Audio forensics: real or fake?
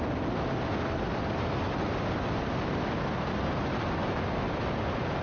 real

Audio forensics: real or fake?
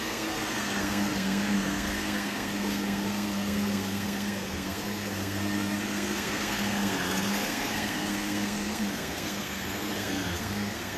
fake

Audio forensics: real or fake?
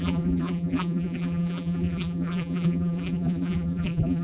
fake